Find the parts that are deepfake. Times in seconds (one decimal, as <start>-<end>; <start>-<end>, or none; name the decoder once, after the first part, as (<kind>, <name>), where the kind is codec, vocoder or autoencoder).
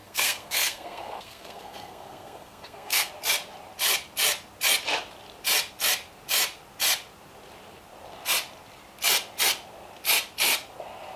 0.0-3.1 (codec, SNAC)